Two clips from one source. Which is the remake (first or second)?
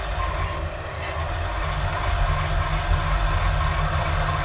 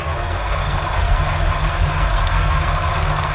second